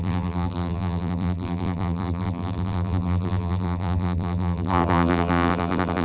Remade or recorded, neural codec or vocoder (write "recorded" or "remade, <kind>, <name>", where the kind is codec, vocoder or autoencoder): remade, vocoder, BigVGAN v2